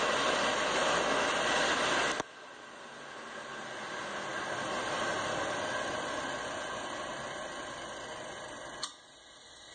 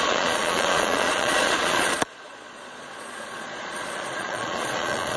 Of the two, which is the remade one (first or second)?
second